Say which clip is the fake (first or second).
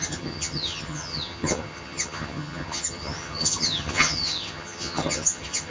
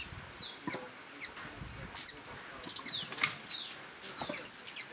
first